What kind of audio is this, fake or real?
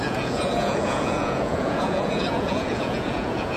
fake